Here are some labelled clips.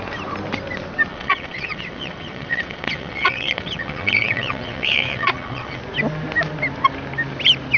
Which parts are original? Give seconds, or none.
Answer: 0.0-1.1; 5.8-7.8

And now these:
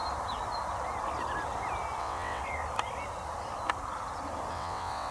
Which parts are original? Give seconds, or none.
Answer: 0.0-2.0; 2.4-4.5

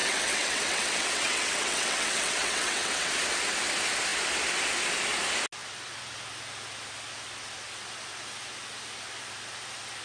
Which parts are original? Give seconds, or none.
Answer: 3.1-10.0

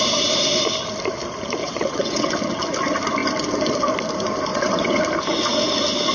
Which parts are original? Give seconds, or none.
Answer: 0.0-1.6; 2.3-4.5; 5.0-6.1

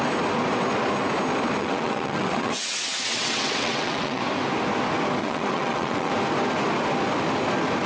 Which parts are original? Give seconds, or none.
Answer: 0.0-1.6; 4.2-5.2; 6.1-7.9

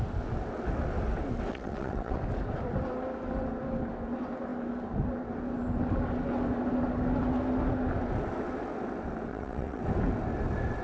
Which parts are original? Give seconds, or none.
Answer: 0.0-1.5; 2.2-9.3; 9.8-10.8